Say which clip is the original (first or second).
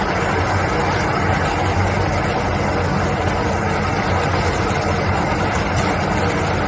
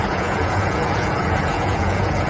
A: first